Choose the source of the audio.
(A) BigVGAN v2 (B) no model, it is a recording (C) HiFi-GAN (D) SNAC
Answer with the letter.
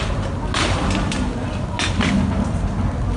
B